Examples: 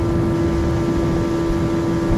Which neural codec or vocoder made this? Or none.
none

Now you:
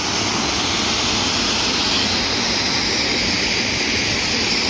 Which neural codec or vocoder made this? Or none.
none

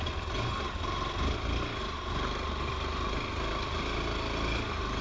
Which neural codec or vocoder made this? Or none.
none